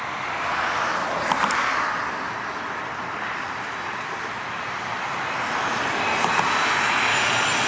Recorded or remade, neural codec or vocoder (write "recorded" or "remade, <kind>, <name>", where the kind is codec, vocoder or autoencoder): recorded